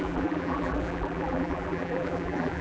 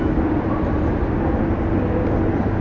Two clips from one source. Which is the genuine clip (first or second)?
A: second